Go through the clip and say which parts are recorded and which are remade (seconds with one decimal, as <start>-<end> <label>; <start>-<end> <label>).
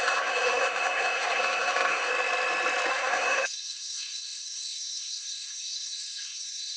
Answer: 0.0-2.1 remade; 2.1-2.9 recorded; 2.9-6.8 remade